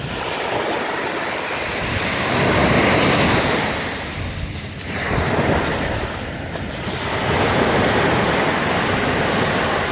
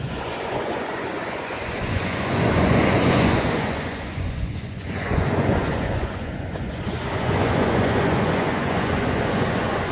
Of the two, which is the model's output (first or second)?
second